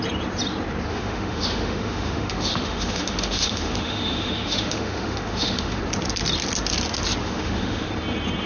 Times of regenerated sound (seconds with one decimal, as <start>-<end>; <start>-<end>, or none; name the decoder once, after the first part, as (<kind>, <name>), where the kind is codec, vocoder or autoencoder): 0.9-5.8 (autoencoder, DAC-VAE); 7.2-7.9